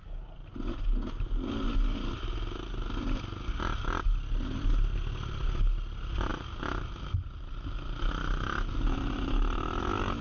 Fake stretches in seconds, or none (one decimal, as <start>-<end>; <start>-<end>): none

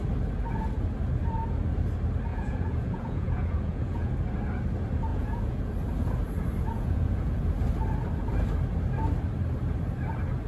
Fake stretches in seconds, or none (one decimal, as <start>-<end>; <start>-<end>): 2.3-4.1; 5.1-5.7; 6.7-7.5

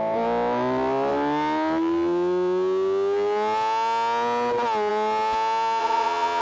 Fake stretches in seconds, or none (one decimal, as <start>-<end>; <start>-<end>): 5.8-6.4

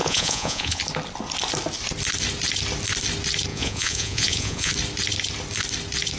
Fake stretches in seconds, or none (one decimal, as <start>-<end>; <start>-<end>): 0.0-0.8; 3.5-4.7

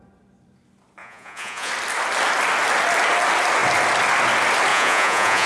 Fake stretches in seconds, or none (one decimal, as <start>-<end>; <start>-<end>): 1.0-1.7; 4.7-5.5